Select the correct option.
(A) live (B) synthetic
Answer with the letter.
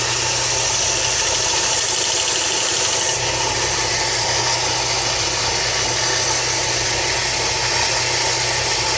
A